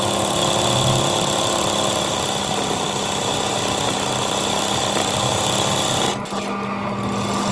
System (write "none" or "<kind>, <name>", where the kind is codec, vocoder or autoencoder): none